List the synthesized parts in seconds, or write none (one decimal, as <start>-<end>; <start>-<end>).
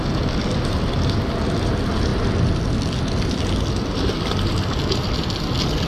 none